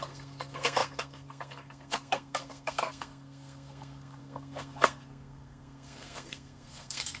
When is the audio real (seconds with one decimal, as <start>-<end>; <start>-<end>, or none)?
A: none